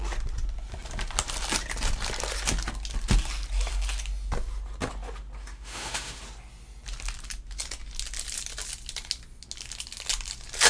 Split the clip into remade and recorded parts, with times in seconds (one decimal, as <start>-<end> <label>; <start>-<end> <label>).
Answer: 0.0-5.4 recorded; 5.4-6.2 remade; 6.2-10.7 recorded